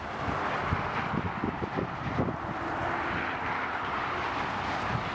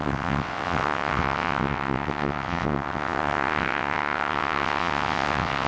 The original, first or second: first